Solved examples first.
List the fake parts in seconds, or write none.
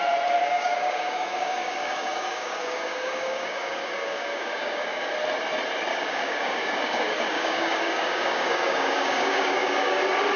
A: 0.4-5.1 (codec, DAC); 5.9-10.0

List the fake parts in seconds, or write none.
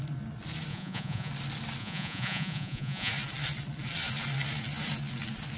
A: 0.7-1.3 (vocoder, Vocos); 1.8-3.1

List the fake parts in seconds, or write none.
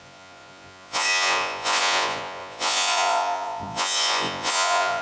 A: 0.0-5.0 (vocoder, Vocos)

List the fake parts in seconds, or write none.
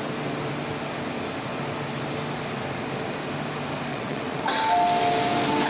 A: 3.9-4.4 (vocoder, WaveNeXt)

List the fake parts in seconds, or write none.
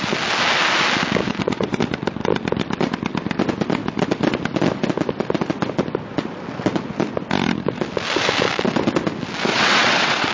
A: 1.2-1.8 (vocoder, WaveNeXt); 9.5-10.3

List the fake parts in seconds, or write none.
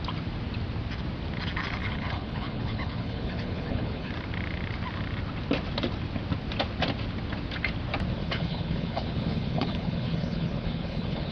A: 1.8-4.1 (codec, HILCodec); 8.2-11.3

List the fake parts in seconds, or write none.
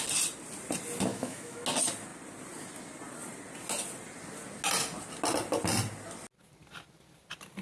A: 1.1-1.6 (autoencoder, DAC-VAE)